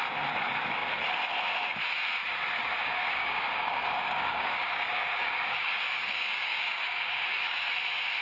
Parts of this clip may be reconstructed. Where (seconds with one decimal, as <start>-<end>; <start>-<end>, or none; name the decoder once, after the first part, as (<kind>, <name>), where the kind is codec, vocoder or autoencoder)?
2.8-7.7 (codec, DAC)